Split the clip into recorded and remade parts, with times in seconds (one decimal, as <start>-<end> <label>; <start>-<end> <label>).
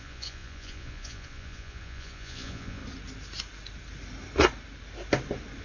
0.0-2.8 remade; 2.8-5.6 recorded